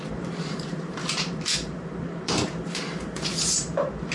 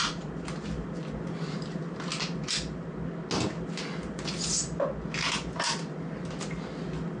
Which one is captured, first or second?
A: second